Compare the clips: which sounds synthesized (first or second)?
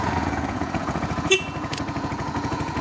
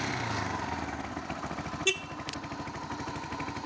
first